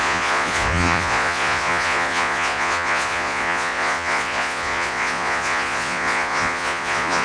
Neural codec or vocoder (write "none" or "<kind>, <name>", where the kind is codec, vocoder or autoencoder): vocoder, Vocos